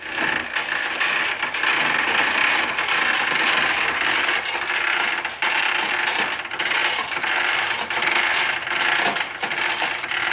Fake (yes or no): no